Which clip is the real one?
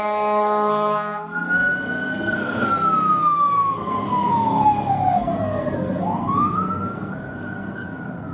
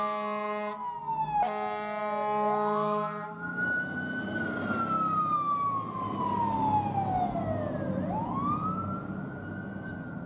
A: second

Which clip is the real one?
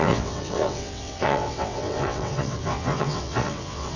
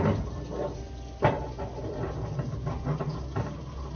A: second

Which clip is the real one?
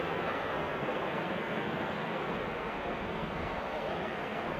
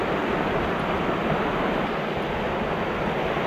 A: second